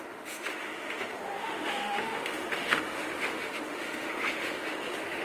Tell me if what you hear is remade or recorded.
remade